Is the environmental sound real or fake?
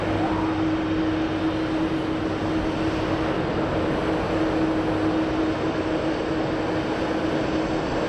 real